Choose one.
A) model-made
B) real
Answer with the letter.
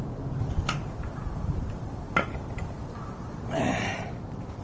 A